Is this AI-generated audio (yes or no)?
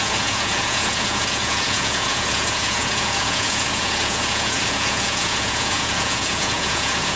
yes